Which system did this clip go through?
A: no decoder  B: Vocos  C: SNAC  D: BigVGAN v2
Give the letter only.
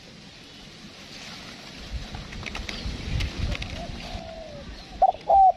A